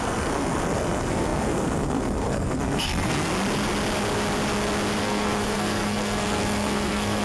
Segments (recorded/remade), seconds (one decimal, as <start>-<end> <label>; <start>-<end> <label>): 0.0-3.3 remade; 3.3-5.0 recorded; 5.0-7.2 remade